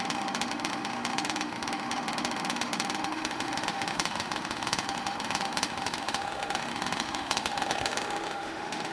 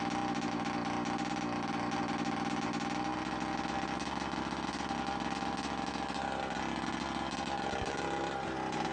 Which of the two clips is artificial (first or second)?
first